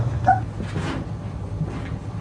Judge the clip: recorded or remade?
recorded